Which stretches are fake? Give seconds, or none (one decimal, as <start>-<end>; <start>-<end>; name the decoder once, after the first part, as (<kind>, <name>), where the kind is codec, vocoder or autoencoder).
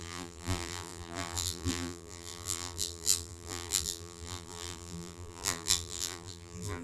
0.0-6.8 (vocoder, BigVGAN v2)